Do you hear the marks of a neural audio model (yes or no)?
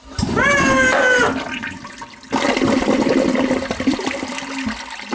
no